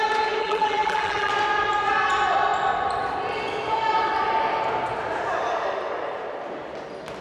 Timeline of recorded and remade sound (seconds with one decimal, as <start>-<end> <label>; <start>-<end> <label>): 0.0-0.4 recorded; 0.4-1.3 remade; 1.3-7.2 recorded